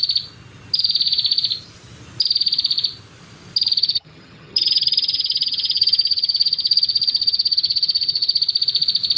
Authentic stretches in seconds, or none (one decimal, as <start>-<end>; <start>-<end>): 0.0-3.8; 8.4-9.2